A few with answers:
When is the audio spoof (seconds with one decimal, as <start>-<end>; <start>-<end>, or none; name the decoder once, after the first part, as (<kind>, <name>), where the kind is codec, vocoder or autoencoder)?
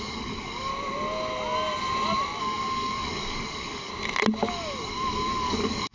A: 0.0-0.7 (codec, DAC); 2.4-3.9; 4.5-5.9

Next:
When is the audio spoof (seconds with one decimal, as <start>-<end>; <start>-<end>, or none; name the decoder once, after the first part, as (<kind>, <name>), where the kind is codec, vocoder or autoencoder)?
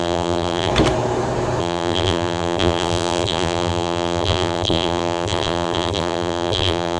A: 0.0-0.7 (vocoder, BigVGAN v2); 1.6-7.0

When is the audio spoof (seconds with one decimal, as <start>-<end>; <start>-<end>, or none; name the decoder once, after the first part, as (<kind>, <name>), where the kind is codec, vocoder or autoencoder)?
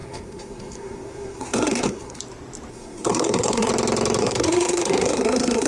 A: 0.0-2.2 (codec, SNAC); 2.7-3.7; 4.2-5.7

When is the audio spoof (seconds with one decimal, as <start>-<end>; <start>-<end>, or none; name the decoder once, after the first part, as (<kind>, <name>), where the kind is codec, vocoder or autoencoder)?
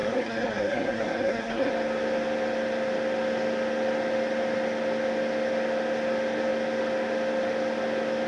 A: 0.0-1.7 (codec, SNAC)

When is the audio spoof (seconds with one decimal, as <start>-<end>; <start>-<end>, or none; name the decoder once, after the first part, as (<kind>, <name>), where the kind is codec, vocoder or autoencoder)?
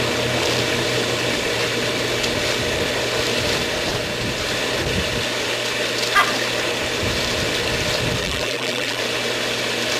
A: 8.2-9.0 (vocoder, BigVGAN v2)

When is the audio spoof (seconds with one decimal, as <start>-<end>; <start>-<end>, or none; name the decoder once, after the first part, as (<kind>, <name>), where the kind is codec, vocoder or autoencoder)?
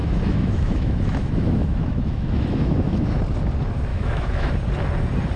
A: 0.0-3.2 (autoencoder, DAC-VAE); 3.9-4.5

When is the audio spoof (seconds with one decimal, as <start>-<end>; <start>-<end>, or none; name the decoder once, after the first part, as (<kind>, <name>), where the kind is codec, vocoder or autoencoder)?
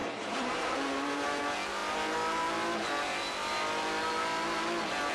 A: 0.0-1.4 (vocoder, BigVGAN v2)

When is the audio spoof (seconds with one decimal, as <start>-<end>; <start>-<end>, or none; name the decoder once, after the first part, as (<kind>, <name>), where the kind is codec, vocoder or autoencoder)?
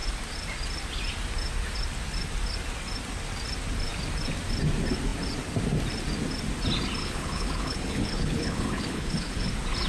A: 7.0-9.5 (codec, HILCodec)